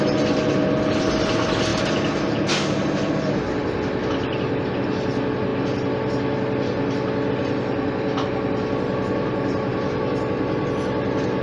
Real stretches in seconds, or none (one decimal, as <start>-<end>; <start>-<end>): 0.0-11.4